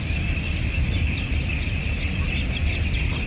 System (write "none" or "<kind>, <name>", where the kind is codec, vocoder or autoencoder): none